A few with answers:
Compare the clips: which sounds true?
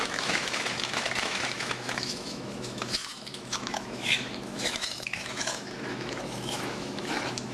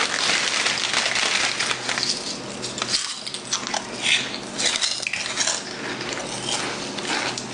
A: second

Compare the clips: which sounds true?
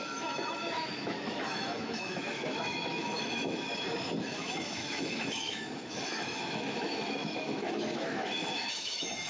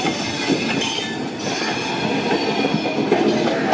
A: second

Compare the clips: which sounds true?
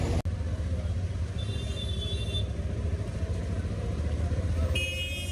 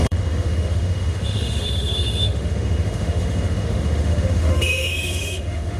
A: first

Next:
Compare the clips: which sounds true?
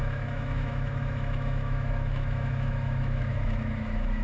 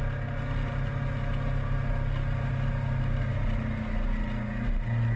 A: second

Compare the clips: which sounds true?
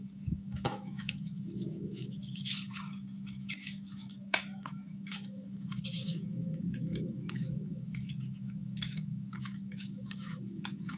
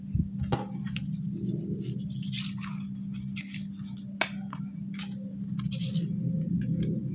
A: second